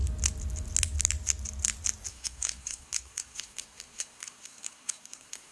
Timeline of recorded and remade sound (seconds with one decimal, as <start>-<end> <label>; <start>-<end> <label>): 0.0-2.1 recorded; 2.1-5.5 remade

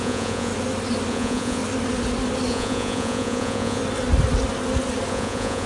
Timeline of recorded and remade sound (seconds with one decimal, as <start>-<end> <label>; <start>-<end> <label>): 0.0-0.5 remade; 0.5-1.1 recorded; 1.1-1.6 remade; 1.6-2.5 recorded; 2.5-3.8 remade; 3.8-5.1 recorded; 5.1-5.7 remade

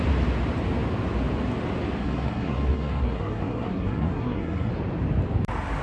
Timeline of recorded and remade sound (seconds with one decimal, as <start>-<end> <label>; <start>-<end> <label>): 0.0-2.0 recorded; 2.0-4.7 remade; 4.7-5.8 recorded